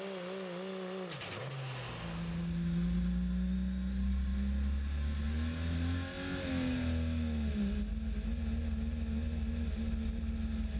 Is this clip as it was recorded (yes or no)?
yes